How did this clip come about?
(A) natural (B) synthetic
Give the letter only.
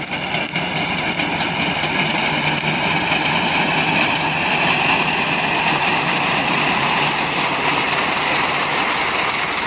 A